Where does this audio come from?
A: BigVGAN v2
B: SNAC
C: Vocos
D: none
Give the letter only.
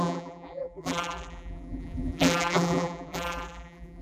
A